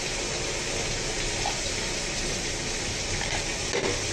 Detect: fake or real real